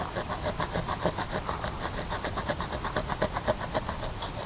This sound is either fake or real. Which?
real